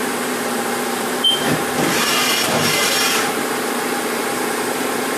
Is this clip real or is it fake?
fake